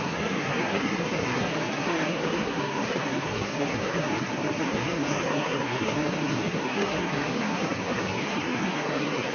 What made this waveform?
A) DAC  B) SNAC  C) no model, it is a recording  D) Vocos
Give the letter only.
B